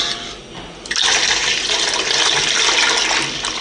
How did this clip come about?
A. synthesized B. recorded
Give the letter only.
B